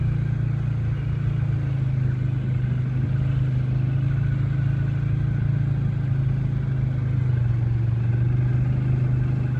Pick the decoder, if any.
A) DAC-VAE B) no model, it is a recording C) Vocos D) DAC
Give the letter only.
B